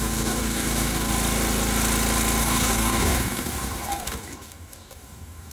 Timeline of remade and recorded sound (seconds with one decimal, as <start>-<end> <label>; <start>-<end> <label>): 0.0-1.1 remade; 1.1-2.4 recorded; 2.4-5.5 remade